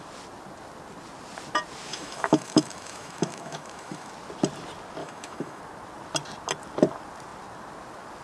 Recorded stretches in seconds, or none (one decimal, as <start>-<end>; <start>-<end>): 0.0-1.9; 4.1-5.0; 5.6-8.2